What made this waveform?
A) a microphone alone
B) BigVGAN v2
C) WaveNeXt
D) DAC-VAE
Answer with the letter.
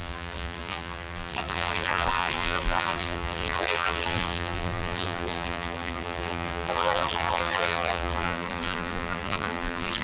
B